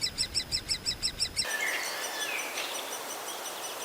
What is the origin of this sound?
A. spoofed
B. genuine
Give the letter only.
B